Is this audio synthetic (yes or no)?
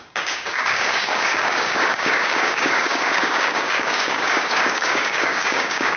yes